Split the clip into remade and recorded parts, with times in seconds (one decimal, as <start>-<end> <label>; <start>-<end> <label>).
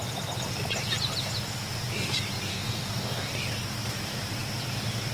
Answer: 0.0-2.5 recorded; 2.5-3.3 remade; 3.3-5.1 recorded